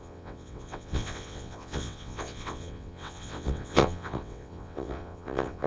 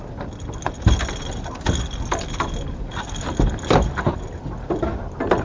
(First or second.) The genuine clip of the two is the second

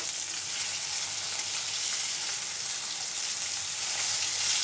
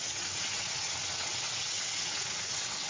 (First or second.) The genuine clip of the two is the first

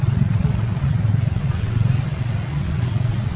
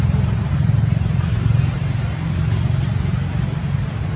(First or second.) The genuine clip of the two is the second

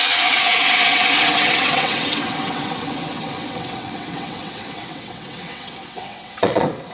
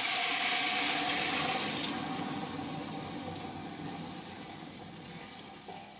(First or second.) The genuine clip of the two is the second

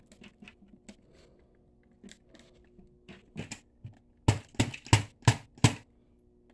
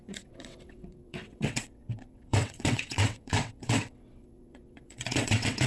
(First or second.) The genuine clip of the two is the first